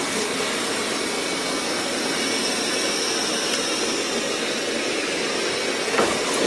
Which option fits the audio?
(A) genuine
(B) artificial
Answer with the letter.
A